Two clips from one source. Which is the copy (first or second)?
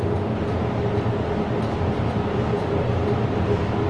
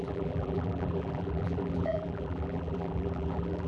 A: second